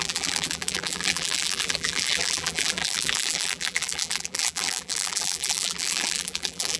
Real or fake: fake